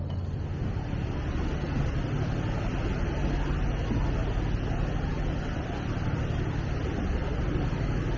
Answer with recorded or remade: recorded